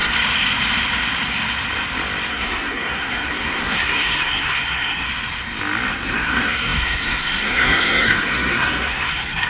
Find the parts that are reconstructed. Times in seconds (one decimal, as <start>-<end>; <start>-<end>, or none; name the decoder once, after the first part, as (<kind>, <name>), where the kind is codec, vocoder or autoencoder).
2.3-5.1 (codec, SNAC); 5.9-9.5